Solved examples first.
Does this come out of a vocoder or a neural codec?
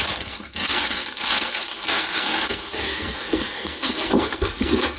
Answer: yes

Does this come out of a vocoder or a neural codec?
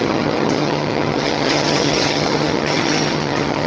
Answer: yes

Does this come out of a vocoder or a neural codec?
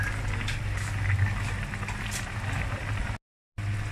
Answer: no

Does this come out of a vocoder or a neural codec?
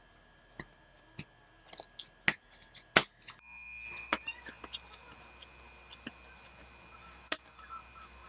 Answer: no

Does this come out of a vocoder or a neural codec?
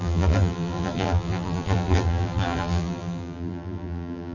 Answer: yes